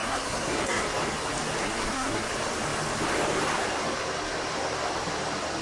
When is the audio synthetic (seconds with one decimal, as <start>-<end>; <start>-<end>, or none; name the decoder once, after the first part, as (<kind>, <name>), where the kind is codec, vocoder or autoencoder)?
0.0-0.8 (codec, SNAC); 1.6-2.3